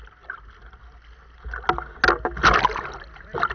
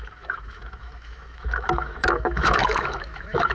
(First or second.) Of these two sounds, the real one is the first